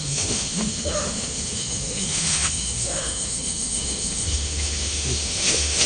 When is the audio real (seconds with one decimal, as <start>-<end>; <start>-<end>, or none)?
none